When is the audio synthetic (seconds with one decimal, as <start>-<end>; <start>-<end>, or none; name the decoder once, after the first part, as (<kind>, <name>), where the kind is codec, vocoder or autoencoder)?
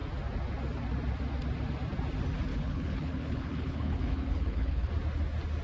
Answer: 2.5-4.9 (codec, HILCodec)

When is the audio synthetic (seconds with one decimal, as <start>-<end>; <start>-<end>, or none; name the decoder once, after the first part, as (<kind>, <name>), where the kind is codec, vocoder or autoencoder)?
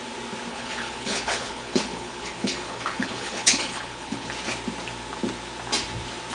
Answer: 0.5-4.3 (codec, HILCodec)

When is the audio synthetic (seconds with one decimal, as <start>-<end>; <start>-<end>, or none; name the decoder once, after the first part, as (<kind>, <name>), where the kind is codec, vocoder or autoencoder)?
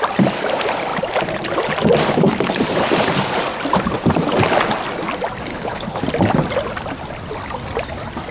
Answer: 5.5-6.0 (codec, HILCodec)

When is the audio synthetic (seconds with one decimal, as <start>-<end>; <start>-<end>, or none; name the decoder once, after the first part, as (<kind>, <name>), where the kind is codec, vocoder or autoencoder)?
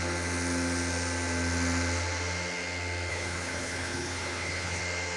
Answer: 3.1-4.8 (codec, HILCodec)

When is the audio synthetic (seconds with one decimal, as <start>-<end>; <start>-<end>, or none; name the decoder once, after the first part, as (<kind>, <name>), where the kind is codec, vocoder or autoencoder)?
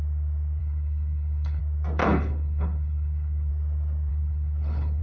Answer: 0.6-1.6 (codec, HILCodec); 2.0-3.5; 4.1-5.0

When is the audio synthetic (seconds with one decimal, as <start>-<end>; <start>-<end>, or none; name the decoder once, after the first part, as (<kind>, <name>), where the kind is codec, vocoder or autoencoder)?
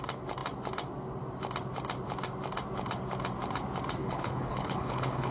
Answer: 4.0-5.3 (codec, HILCodec)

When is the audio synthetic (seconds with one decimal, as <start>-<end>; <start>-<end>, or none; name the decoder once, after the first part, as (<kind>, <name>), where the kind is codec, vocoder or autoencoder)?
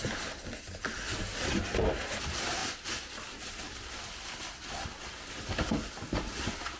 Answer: none